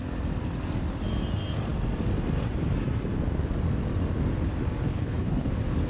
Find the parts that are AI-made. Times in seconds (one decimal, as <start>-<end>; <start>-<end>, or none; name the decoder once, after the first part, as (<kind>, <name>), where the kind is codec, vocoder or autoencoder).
4.9-5.5 (codec, HILCodec)